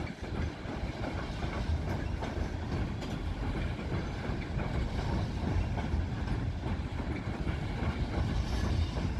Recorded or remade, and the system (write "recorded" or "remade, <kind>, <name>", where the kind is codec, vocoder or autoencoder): recorded